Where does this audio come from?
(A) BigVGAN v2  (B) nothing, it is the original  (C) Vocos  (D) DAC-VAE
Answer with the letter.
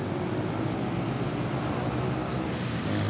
B